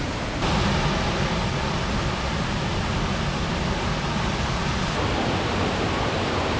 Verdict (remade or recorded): recorded